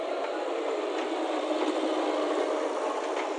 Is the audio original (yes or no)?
yes